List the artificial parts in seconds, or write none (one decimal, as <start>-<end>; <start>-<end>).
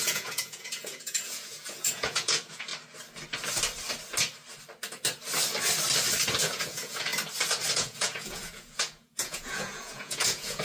0.0-2.7; 6.4-7.1; 7.7-10.6